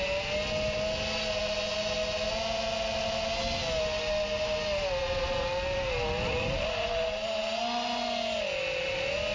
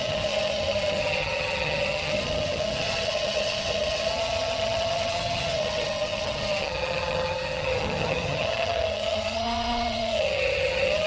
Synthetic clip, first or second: second